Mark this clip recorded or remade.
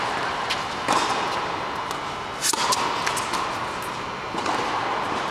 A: recorded